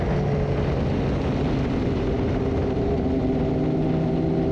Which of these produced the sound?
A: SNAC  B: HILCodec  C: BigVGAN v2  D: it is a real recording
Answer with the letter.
D